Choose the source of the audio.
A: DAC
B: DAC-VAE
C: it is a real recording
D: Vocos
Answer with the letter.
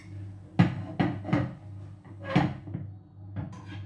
C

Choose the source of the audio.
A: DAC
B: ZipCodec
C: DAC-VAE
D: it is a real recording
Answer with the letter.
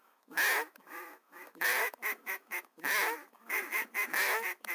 C